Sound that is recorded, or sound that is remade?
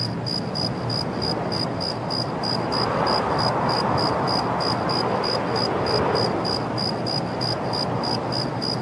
recorded